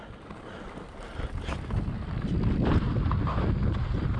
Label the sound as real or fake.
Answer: real